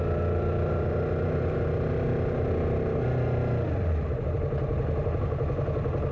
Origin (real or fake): real